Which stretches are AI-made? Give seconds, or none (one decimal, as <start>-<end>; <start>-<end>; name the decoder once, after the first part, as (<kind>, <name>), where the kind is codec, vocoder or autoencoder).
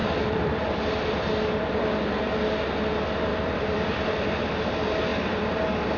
0.0-0.8 (vocoder, BigVGAN v2); 3.3-4.3; 5.1-6.0